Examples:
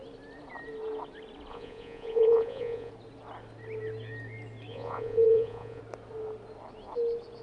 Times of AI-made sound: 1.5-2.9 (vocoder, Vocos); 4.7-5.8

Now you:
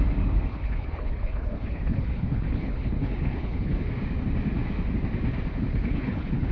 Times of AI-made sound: 0.5-3.9 (codec, HILCodec); 5.7-6.5